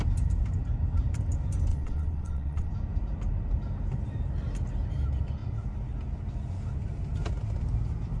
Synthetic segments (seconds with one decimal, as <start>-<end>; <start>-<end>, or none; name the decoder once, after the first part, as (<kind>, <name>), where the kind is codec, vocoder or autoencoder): 1.7-2.7 (vocoder, WaveNeXt)